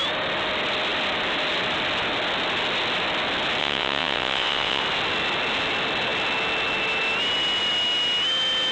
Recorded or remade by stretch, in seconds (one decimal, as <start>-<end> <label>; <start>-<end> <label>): 0.0-3.6 recorded; 3.6-4.8 remade; 4.8-8.7 recorded